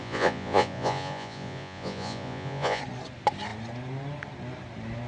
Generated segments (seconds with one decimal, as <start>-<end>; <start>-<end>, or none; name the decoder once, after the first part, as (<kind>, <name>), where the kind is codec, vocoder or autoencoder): 0.0-2.8 (vocoder, Vocos)